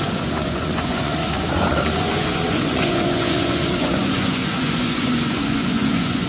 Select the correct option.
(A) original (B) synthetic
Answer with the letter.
B